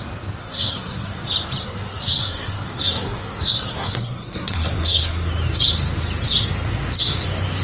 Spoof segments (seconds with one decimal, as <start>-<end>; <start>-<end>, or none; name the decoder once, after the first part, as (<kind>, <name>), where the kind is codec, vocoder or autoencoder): 0.4-1.2 (codec, SNAC); 1.6-5.3